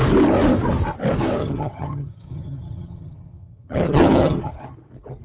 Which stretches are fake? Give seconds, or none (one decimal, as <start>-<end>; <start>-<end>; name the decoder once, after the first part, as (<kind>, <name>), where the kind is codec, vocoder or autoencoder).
1.4-4.5 (vocoder, HiFi-GAN)